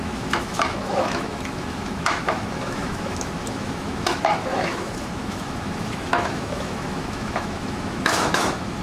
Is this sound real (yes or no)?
no